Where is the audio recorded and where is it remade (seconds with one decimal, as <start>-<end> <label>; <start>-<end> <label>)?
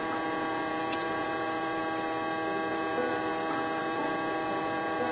0.0-1.8 remade; 1.8-2.7 recorded; 2.7-3.3 remade; 3.3-3.8 recorded; 3.8-5.1 remade